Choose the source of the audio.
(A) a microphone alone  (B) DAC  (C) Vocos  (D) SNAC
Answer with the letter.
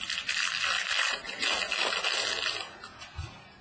A